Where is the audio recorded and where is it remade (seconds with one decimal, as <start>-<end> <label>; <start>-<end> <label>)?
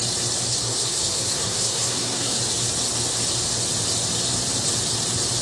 0.0-0.5 recorded; 0.5-2.4 remade; 2.4-5.4 recorded